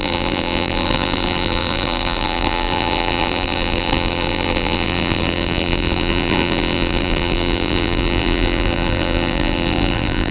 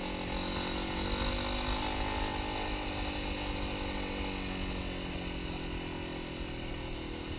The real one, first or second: second